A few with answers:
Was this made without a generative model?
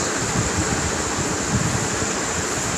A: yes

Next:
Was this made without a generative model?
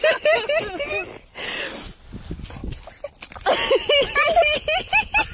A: yes